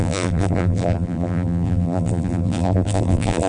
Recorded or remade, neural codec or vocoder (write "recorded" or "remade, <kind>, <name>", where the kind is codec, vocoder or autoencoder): remade, vocoder, BigVGAN v2